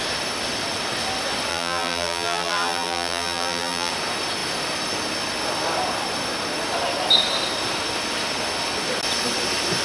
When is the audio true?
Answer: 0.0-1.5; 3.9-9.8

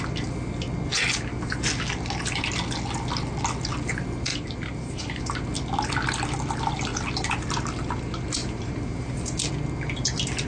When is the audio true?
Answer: 0.0-4.3; 5.2-6.9; 7.4-8.4; 9.2-10.5

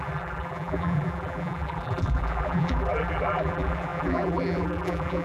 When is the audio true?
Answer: none

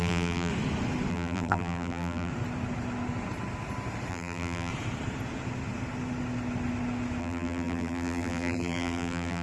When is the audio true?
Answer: 0.5-1.1; 2.3-4.1; 4.7-7.2